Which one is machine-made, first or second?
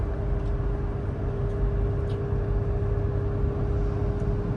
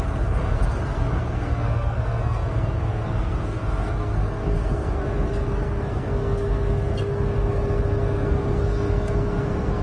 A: second